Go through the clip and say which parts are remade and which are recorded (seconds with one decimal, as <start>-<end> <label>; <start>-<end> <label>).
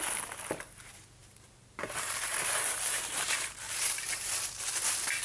0.0-1.2 recorded; 1.2-4.3 remade; 4.3-5.2 recorded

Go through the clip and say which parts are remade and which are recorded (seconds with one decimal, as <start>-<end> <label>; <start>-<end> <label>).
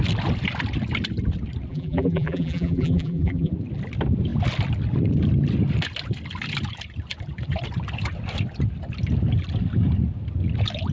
0.0-1.7 recorded; 1.7-3.5 remade; 3.5-10.9 recorded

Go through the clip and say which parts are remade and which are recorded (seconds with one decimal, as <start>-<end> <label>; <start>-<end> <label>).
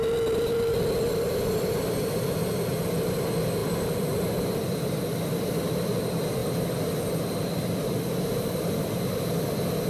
0.0-6.4 recorded; 6.4-7.0 remade; 7.0-9.9 recorded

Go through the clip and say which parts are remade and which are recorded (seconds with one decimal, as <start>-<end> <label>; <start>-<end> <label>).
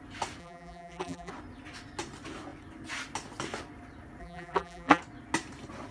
0.0-0.4 recorded; 0.4-1.3 remade; 1.3-4.2 recorded; 4.2-5.0 remade; 5.0-5.9 recorded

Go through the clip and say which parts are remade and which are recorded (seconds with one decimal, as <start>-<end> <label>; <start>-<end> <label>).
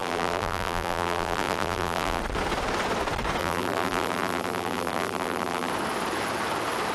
0.0-2.2 remade; 2.2-3.4 recorded; 3.4-5.7 remade; 5.7-6.9 recorded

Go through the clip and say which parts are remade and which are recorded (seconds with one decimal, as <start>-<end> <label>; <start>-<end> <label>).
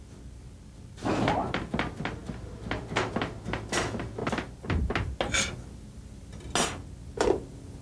0.0-7.8 recorded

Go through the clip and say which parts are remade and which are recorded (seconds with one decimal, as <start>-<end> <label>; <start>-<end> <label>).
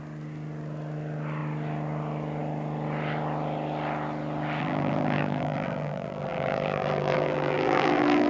0.0-4.6 recorded; 4.6-8.3 remade